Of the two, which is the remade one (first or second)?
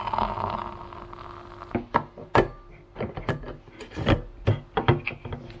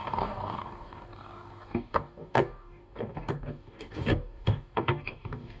second